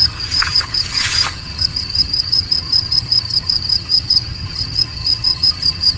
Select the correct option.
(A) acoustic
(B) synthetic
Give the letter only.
B